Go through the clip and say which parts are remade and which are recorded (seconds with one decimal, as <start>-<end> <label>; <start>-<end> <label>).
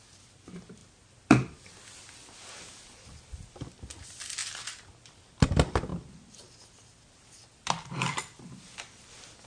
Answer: 0.0-0.8 recorded; 0.8-2.5 remade; 2.5-4.4 recorded; 4.4-4.9 remade; 4.9-5.9 recorded; 5.9-8.5 remade; 8.5-9.5 recorded